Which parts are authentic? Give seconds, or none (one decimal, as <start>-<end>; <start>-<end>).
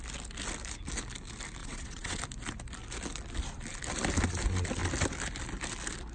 0.0-1.6; 2.2-6.1